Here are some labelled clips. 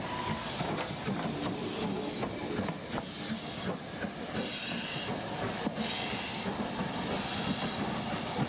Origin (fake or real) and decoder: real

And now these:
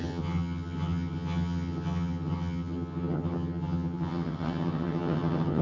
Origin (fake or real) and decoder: fake, vocoder, HiFi-GAN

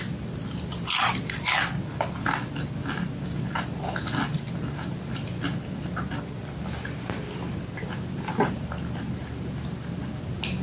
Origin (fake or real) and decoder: real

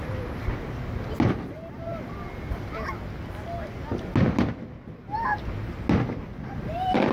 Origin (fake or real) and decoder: real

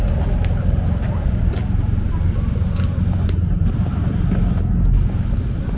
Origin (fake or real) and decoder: real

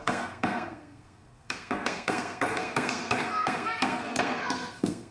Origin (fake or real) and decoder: fake, codec, SNAC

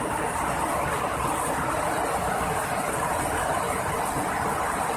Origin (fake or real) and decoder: real